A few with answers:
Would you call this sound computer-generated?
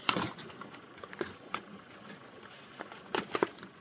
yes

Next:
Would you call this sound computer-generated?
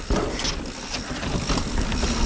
no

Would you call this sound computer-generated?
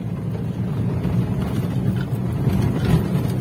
no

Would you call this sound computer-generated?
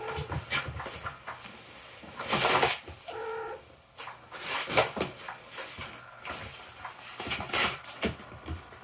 no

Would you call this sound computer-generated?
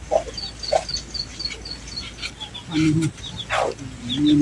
no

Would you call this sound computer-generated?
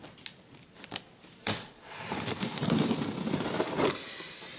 no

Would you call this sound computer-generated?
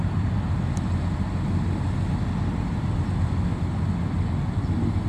no